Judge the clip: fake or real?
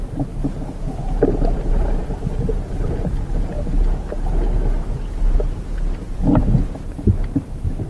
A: real